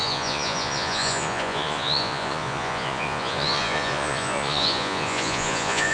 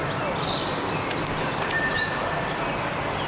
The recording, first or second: second